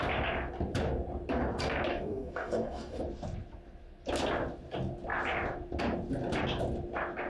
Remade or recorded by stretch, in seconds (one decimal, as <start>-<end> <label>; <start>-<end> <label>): 0.0-1.9 recorded; 1.9-3.0 remade; 3.0-7.3 recorded